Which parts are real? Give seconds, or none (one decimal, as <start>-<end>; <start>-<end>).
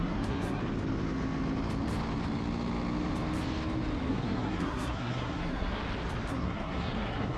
0.6-4.1; 5.8-6.3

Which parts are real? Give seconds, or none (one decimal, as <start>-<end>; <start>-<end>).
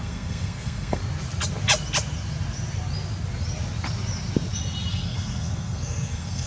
1.0-4.9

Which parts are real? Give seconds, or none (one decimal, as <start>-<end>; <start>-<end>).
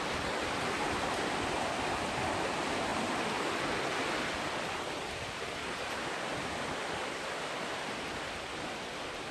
0.0-9.3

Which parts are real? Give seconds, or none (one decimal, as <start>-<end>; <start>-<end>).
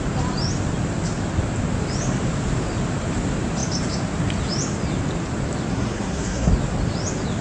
0.0-5.7; 6.5-7.4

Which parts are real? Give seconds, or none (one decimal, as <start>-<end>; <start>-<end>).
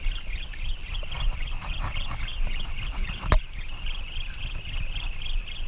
0.0-5.7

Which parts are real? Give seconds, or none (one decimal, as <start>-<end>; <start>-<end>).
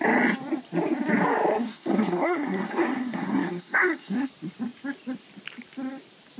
0.0-1.5; 4.3-6.4